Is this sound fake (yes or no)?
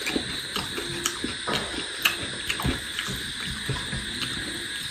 no